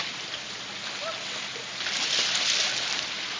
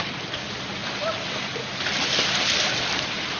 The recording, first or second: first